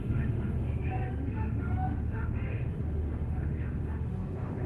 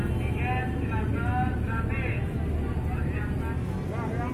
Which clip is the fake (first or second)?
first